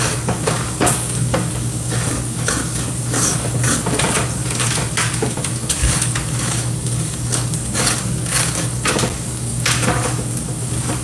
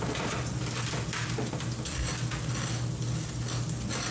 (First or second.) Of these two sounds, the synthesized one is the first